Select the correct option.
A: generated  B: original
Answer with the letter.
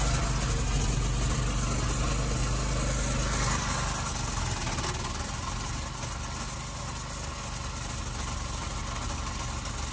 B